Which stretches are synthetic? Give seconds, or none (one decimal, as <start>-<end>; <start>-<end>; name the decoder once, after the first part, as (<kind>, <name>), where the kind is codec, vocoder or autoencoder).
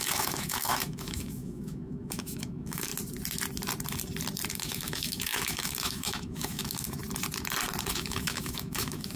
0.0-2.9 (autoencoder, DAC-VAE); 4.5-7.0; 7.9-9.2